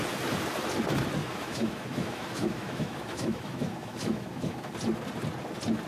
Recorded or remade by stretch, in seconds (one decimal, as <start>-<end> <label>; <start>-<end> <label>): 0.0-1.2 recorded; 1.2-4.7 remade; 4.7-5.9 recorded